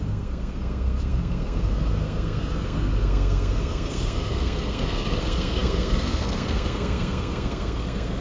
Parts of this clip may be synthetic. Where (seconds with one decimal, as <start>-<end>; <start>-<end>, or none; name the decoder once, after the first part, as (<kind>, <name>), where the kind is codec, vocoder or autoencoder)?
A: 0.0-8.2 (codec, SNAC)